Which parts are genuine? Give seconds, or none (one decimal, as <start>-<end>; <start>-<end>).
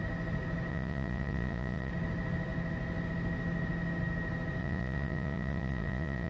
0.0-0.7; 1.9-4.6